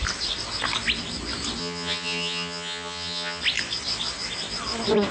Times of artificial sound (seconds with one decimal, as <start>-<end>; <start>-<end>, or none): 1.6-3.4